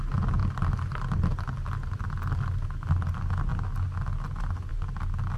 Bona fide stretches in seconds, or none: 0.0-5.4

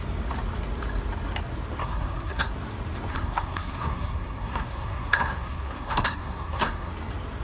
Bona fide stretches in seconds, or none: 0.0-1.8; 2.5-3.1; 6.9-7.4

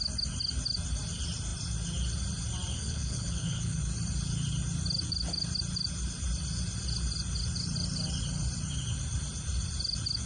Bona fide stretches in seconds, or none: 0.0-2.7; 3.8-10.3

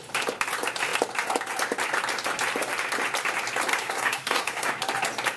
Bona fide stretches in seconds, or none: 0.0-3.7; 4.7-5.4

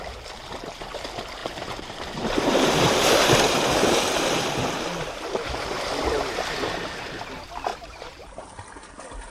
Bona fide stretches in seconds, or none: 0.0-1.4; 5.8-7.7; 8.4-9.3

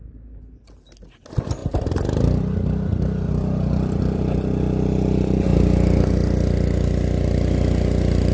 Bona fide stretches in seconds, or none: 0.0-1.6; 4.2-8.3